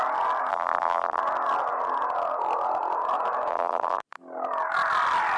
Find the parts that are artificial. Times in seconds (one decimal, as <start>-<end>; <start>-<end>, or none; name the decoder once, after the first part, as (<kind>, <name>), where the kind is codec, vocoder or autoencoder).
0.5-1.2 (vocoder, BigVGAN v2); 3.5-4.0